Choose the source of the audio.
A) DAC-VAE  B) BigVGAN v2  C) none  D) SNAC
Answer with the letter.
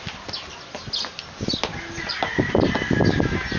C